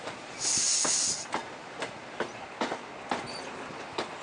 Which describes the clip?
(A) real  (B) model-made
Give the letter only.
A